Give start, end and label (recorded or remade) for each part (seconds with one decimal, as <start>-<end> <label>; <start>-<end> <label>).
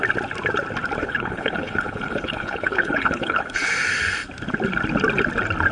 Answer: 0.0-1.0 recorded; 1.0-3.7 remade; 3.7-5.7 recorded